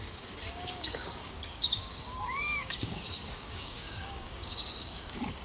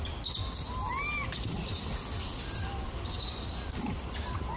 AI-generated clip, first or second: first